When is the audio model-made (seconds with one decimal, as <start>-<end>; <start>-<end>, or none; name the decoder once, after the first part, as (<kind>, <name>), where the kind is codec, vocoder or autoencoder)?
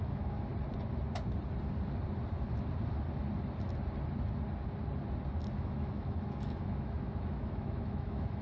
0.0-0.5 (autoencoder, DAC-VAE); 5.5-8.4